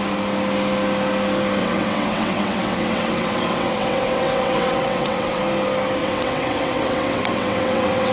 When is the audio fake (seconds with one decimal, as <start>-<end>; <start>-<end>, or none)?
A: 1.6-5.4; 6.0-8.1